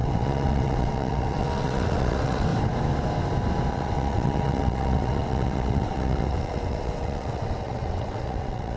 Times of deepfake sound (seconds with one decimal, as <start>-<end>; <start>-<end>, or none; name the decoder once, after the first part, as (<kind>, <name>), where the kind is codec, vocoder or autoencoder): 0.0-2.5 (vocoder, WaveNeXt); 3.7-8.8